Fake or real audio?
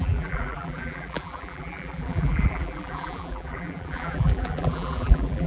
fake